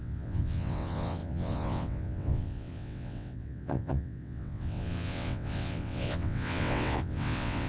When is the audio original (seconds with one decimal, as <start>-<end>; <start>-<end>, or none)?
none